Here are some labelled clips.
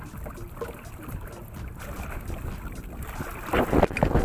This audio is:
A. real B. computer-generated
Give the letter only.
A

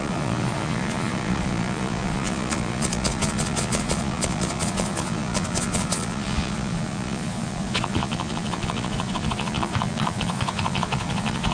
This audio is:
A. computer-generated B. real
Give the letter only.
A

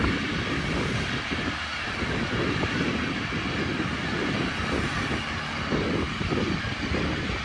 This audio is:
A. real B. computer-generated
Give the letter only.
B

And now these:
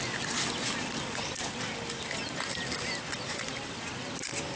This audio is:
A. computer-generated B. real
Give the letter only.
B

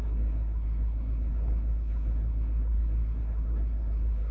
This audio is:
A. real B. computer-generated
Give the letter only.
B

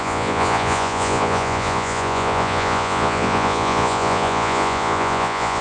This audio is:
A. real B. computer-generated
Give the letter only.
B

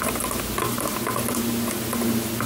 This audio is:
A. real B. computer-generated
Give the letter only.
A